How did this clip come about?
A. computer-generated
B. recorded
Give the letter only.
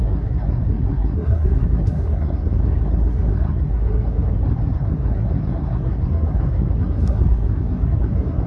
A